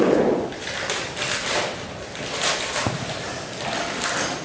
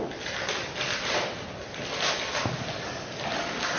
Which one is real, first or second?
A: second